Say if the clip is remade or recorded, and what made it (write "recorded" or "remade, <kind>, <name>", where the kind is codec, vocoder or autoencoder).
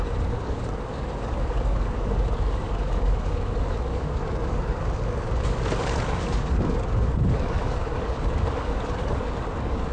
remade, codec, DAC